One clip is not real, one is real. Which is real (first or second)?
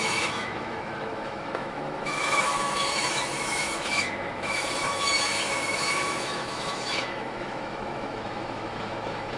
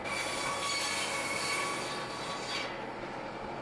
second